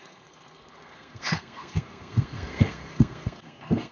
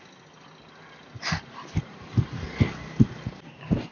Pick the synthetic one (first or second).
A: first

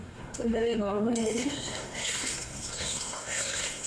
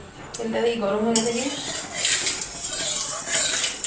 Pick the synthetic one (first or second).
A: first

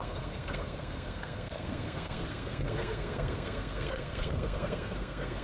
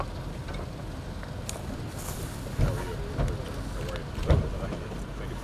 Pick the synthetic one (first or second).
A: first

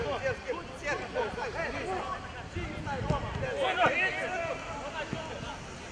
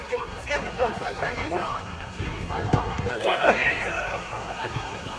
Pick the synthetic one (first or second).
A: second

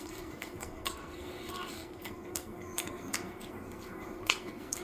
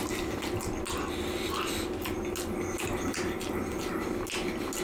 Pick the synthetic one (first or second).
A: first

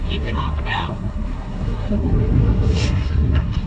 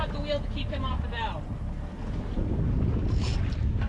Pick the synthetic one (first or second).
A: first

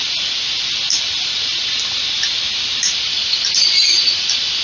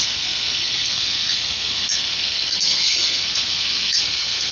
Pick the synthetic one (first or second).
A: second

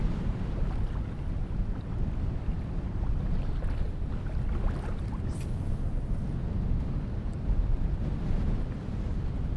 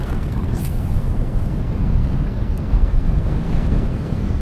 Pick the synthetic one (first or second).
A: second